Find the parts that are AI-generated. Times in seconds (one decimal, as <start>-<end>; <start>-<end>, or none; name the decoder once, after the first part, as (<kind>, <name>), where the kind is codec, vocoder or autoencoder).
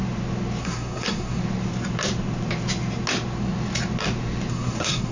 0.6-1.4 (codec, SNAC); 4.5-5.1